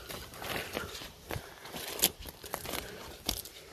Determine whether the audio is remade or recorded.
recorded